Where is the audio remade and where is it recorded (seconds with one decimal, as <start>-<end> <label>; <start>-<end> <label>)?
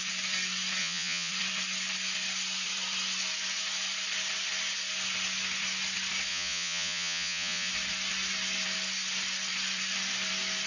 0.0-0.8 recorded; 0.8-1.3 remade; 1.3-6.3 recorded; 6.3-7.7 remade; 7.7-10.7 recorded